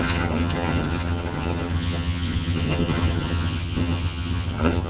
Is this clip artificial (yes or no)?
yes